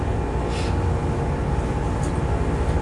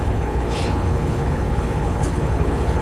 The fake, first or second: second